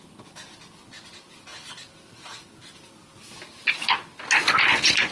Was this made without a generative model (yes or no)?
yes